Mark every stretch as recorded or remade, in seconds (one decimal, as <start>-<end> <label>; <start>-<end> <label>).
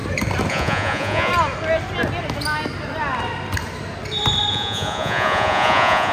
0.0-0.5 recorded; 0.5-1.3 remade; 1.3-4.5 recorded; 4.5-6.1 remade